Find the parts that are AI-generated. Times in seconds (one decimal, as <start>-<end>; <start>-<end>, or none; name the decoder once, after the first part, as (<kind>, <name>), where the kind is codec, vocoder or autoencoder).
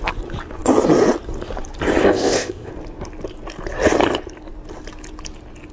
2.0-2.7 (codec, ZipCodec)